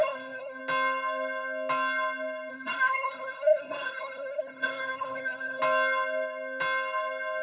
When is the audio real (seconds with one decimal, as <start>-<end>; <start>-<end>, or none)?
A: 0.6-2.5; 5.6-7.4